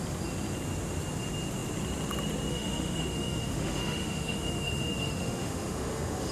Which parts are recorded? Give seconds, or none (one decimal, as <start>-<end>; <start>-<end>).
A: 0.0-2.5